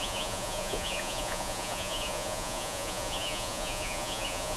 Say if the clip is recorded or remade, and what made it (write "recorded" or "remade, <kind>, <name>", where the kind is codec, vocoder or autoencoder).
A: remade, vocoder, Vocos